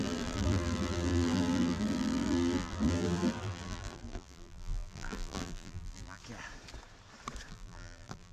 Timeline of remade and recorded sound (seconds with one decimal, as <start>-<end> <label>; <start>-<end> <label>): 0.0-6.2 remade; 6.2-7.5 recorded; 7.5-8.3 remade